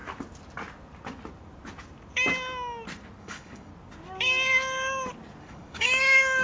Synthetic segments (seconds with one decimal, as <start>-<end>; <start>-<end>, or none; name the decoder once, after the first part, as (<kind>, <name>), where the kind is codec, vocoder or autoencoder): 3.2-3.7 (codec, DAC); 5.4-6.4